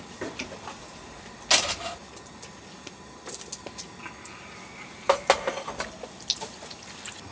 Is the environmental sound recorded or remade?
recorded